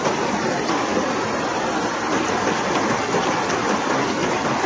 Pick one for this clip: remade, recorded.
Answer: recorded